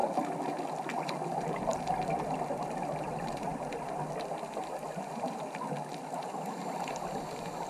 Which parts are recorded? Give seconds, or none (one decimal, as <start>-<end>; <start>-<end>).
0.0-7.7

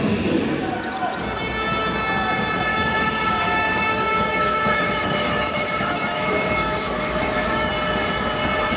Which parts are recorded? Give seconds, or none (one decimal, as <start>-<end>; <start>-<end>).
0.0-2.7; 7.7-8.8

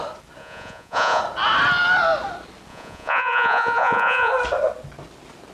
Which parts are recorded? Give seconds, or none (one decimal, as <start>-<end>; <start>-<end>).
0.0-0.4; 1.2-2.7; 4.3-5.5